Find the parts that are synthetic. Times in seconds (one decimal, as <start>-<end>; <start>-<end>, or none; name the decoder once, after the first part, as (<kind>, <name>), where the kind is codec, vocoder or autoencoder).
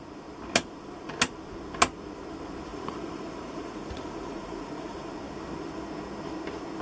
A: 2.7-5.1 (vocoder, Vocos)